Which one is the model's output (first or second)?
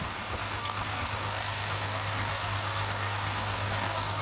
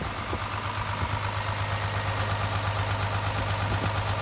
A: first